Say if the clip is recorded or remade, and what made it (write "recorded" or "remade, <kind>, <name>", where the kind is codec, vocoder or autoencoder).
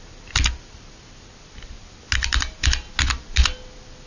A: recorded